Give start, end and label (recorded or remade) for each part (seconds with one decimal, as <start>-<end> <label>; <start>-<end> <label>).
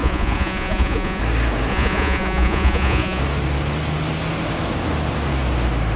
0.0-1.2 remade; 1.2-1.7 recorded; 1.7-3.2 remade; 3.2-6.0 recorded